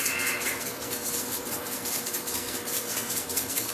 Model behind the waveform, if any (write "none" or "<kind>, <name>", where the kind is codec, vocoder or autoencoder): codec, SNAC